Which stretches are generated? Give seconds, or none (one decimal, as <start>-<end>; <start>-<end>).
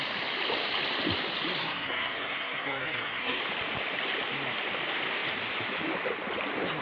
1.6-3.4